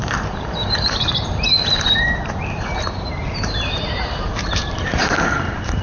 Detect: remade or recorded remade